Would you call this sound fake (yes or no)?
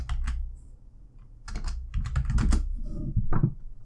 no